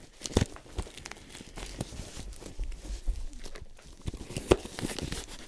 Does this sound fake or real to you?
real